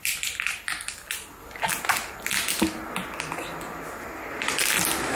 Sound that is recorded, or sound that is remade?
recorded